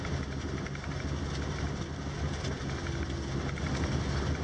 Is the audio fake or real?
real